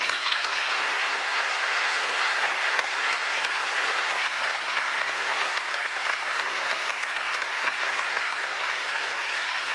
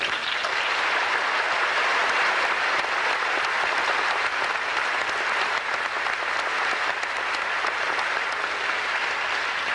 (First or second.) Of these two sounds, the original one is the second